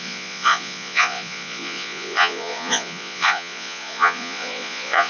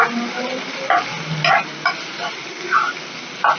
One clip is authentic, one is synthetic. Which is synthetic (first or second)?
first